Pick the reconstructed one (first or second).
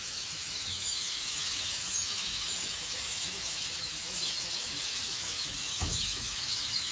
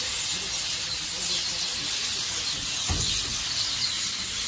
first